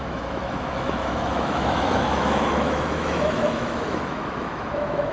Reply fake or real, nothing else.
fake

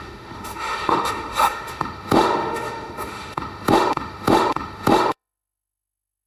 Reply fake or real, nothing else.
fake